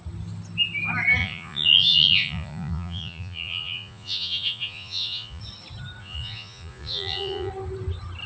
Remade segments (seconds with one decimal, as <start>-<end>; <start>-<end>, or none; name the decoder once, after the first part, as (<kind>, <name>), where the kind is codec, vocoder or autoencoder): 1.2-5.4 (vocoder, Vocos); 6.0-7.5